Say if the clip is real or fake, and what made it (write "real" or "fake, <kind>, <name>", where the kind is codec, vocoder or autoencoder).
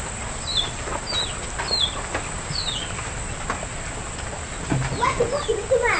real